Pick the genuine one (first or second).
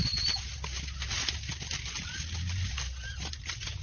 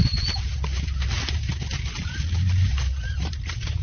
first